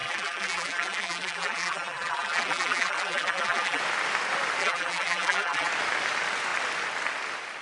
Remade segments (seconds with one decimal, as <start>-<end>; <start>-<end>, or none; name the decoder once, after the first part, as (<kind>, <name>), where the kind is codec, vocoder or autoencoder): 0.0-3.8 (vocoder, BigVGAN v2); 4.6-5.7